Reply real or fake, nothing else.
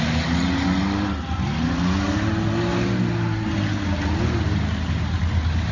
real